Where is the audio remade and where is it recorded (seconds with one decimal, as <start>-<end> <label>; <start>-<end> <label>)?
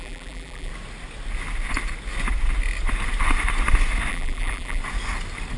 0.0-0.7 remade; 0.7-4.1 recorded; 4.1-4.8 remade; 4.8-5.6 recorded